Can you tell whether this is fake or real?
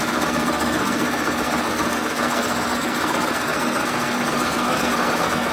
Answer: fake